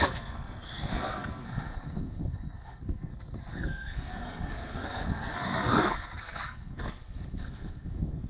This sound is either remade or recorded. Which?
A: remade